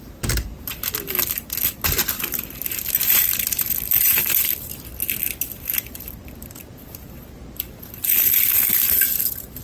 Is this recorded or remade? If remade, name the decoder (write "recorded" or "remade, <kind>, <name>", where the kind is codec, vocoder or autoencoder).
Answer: recorded